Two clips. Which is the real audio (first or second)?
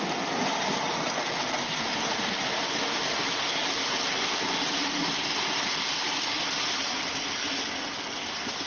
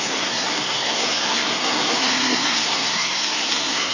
first